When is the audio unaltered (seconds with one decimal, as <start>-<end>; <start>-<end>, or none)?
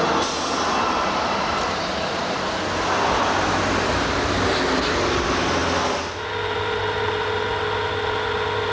0.0-8.7